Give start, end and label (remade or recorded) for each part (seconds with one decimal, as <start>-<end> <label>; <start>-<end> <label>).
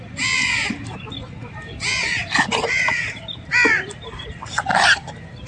0.0-5.5 recorded